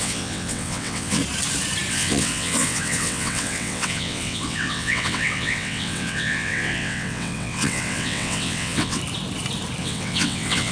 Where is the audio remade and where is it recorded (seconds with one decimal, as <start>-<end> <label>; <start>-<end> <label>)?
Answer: 0.0-1.2 remade; 1.2-1.9 recorded; 1.9-9.0 remade; 9.0-9.8 recorded; 9.8-10.7 remade